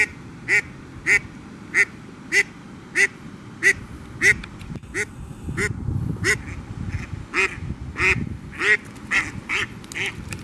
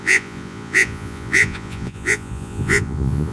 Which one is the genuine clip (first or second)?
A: first